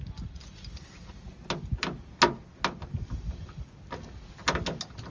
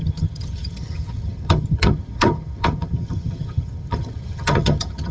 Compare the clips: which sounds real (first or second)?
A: first